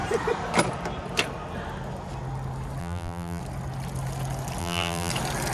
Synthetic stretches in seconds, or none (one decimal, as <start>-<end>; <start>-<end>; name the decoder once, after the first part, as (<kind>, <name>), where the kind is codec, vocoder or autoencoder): 2.8-3.4 (vocoder, BigVGAN v2); 4.6-5.1